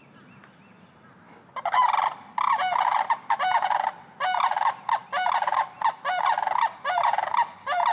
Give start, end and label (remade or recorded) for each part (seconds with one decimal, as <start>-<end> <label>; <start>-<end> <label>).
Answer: 0.0-7.9 recorded